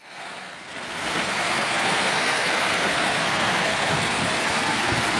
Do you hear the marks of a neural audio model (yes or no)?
yes